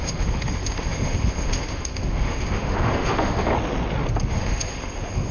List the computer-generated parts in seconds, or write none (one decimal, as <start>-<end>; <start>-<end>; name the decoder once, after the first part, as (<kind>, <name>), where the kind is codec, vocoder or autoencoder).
0.0-3.5 (autoencoder, DAC-VAE); 4.3-5.3

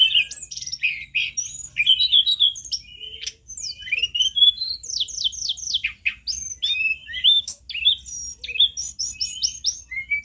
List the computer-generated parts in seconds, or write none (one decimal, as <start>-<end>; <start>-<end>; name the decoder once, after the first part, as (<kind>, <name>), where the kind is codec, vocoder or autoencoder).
7.0-7.6 (autoencoder, DAC-VAE)

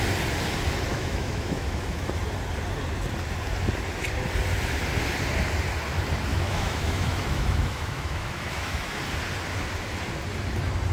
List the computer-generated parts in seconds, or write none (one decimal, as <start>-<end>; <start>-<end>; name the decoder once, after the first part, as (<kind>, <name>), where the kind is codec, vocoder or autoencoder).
0.9-2.1 (autoencoder, DAC-VAE); 6.3-9.0

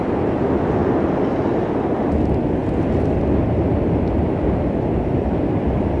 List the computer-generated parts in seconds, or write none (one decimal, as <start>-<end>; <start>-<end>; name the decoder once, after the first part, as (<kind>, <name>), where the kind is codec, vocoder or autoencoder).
none

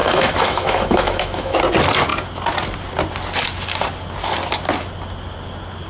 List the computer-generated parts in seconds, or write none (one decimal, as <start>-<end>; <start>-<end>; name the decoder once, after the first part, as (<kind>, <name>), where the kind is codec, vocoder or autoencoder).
0.0-1.6 (autoencoder, DAC-VAE)

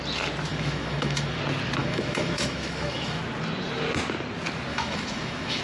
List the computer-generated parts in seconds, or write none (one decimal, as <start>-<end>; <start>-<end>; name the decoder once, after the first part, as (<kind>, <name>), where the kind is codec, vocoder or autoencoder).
0.5-1.4 (autoencoder, DAC-VAE); 1.8-3.2; 4.7-5.6